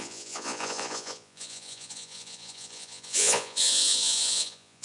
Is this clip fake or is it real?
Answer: fake